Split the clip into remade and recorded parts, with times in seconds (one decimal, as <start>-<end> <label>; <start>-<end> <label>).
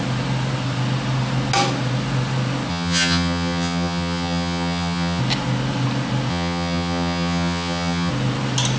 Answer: 0.0-2.7 recorded; 2.7-5.2 remade; 5.2-6.3 recorded; 6.3-8.1 remade; 8.1-8.8 recorded